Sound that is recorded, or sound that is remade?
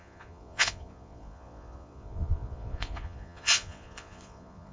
remade